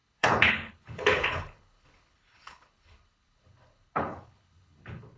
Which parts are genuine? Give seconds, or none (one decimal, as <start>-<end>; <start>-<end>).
none